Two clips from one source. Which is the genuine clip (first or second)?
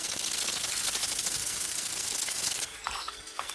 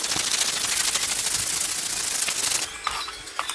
second